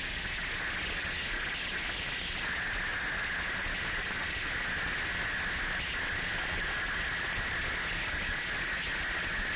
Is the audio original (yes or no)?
yes